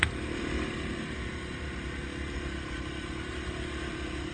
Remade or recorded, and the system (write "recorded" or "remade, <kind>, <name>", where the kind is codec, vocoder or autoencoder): recorded